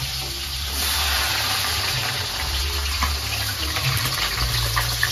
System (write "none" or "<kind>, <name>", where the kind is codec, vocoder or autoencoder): vocoder, BigVGAN v2